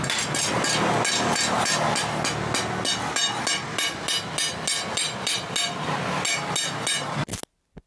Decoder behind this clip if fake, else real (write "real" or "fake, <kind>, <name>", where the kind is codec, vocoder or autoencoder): real